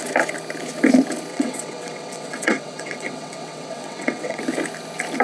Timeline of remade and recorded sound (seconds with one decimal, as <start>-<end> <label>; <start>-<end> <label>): 0.0-1.3 recorded; 1.3-4.4 remade; 4.4-5.2 recorded